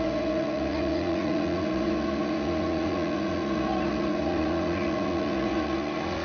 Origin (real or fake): fake